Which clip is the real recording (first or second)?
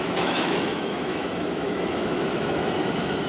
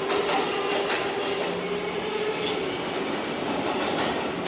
second